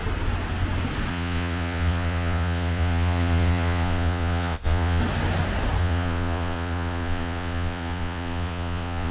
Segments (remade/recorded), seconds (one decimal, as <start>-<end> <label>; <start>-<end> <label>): 0.0-1.1 recorded; 1.1-5.0 remade; 5.0-5.8 recorded; 5.8-9.1 remade